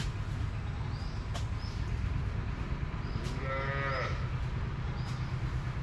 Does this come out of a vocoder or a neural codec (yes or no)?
no